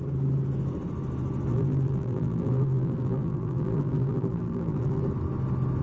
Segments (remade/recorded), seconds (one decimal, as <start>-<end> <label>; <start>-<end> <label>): 0.0-1.5 recorded; 1.5-5.0 remade; 5.0-5.8 recorded